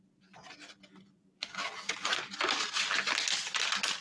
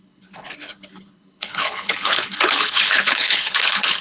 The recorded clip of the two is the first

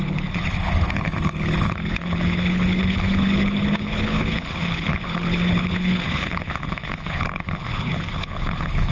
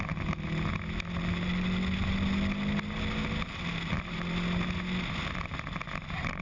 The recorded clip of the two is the second